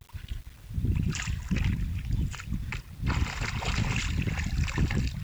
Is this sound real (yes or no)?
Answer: yes